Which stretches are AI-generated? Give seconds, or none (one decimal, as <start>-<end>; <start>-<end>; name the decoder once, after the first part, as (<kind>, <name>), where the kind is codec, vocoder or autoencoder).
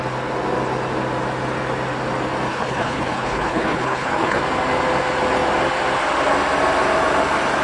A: 2.5-4.4 (codec, HILCodec)